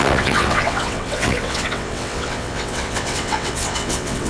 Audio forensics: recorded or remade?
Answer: remade